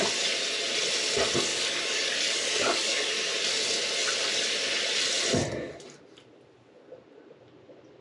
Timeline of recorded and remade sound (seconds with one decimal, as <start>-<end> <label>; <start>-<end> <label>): 0.0-1.5 recorded; 1.5-3.1 remade; 3.1-8.0 recorded

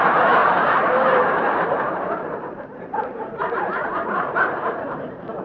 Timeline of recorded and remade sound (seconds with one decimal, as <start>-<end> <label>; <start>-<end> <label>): 0.0-5.4 remade

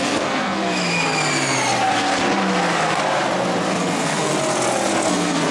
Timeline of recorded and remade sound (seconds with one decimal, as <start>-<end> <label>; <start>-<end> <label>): 0.0-0.6 remade; 0.6-3.8 recorded; 3.8-4.3 remade; 4.3-5.1 recorded; 5.1-5.5 remade

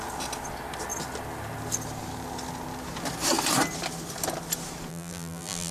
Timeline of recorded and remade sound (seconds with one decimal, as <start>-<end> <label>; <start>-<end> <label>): 0.0-4.9 recorded; 4.9-5.7 remade

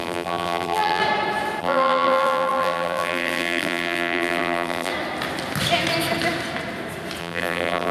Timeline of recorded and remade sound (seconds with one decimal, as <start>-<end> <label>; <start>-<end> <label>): 0.0-1.0 remade; 1.0-1.6 recorded; 1.6-4.9 remade; 4.9-7.2 recorded; 7.2-7.9 remade

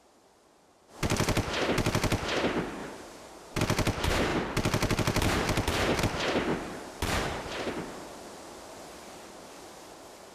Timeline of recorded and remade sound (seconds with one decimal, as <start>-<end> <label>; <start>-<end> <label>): 0.0-2.8 recorded; 2.8-3.6 remade; 3.6-6.5 recorded; 6.5-7.7 remade; 7.7-10.3 recorded

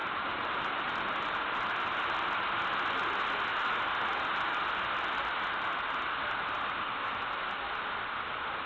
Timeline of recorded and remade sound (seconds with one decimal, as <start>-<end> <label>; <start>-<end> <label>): 0.0-8.7 recorded